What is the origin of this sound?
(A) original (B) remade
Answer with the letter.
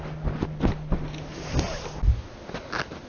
A